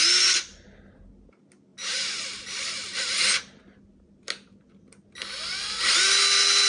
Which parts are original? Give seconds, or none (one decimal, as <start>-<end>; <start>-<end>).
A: 0.0-6.7